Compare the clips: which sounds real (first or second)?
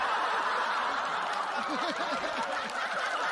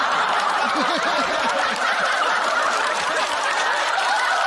first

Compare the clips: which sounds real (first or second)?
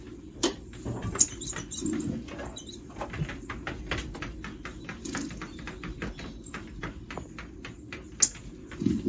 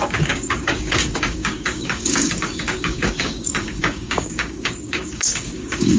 first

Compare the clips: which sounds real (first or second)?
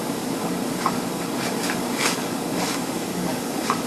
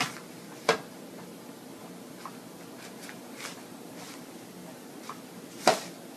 second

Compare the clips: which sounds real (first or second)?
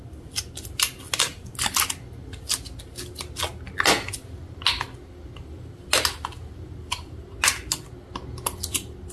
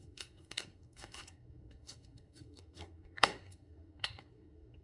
first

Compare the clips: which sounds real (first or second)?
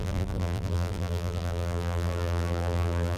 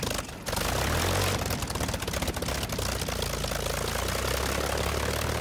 second